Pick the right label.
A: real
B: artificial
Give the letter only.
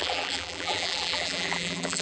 B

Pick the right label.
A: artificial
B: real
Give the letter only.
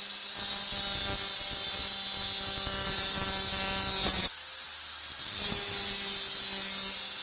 B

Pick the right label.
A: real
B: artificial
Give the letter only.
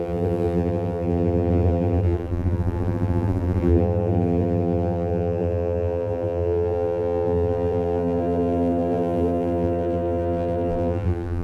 B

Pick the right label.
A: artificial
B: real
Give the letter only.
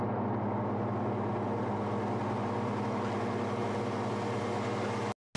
B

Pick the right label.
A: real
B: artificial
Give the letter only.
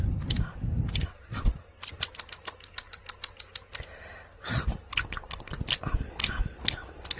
A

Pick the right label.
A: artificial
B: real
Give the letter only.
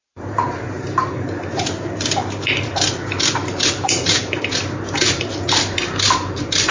A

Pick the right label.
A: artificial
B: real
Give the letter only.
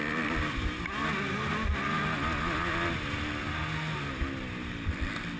B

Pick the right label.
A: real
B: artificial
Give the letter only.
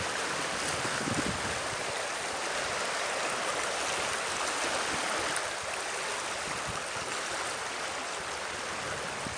A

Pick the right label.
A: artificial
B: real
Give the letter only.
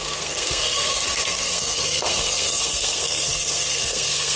A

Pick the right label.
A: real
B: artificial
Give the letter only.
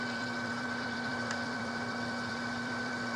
B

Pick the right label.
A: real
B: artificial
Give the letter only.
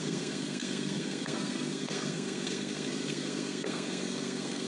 B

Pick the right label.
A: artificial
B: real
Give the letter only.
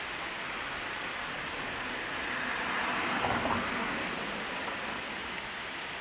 B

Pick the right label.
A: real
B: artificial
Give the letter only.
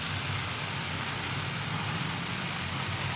A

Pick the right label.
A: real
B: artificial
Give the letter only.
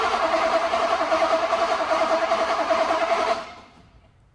B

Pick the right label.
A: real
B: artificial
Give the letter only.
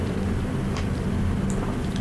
B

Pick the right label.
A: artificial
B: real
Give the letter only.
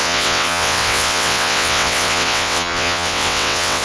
A